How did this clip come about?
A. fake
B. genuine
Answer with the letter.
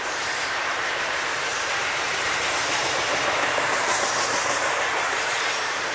A